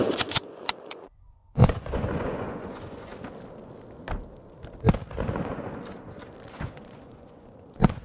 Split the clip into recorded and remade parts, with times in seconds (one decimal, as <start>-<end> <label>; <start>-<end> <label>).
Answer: 0.0-3.1 remade; 3.1-6.5 recorded; 6.5-8.0 remade